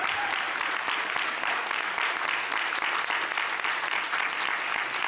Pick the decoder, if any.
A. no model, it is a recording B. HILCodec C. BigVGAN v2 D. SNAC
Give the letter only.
A